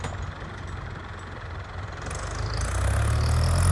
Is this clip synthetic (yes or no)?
no